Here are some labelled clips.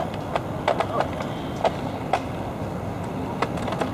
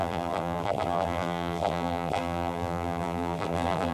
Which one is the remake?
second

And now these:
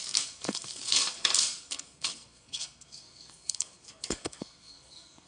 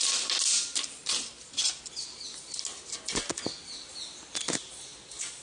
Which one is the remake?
first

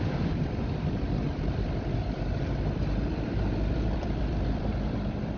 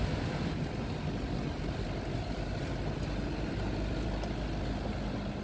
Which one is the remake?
first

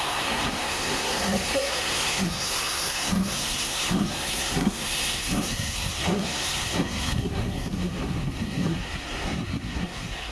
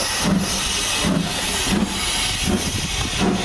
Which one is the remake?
first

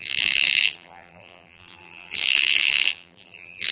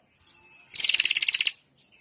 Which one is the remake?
first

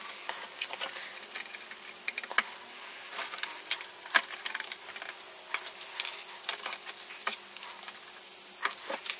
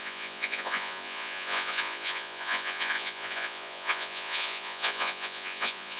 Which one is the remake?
second